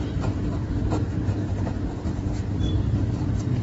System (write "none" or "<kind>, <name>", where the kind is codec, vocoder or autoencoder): vocoder, BigVGAN v2